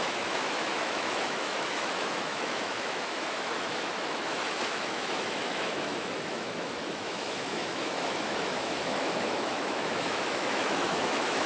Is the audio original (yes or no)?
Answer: no